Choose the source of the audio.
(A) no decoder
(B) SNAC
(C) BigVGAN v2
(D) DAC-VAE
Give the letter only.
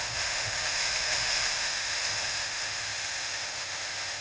D